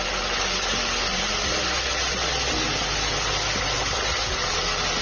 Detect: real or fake real